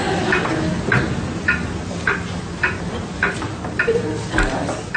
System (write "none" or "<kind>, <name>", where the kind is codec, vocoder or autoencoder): none